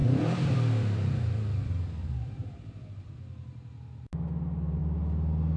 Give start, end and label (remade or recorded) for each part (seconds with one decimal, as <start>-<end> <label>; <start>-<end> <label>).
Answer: 0.0-3.2 remade; 3.2-5.6 recorded